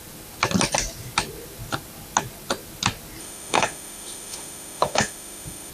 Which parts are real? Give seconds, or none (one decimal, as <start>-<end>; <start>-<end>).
0.0-3.2